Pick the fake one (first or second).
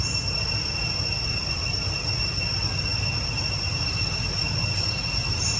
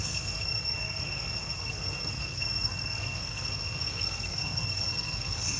second